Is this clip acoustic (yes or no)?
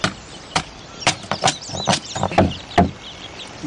no